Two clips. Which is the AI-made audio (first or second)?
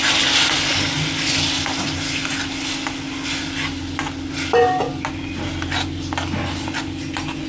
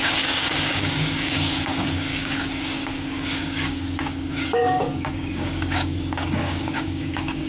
second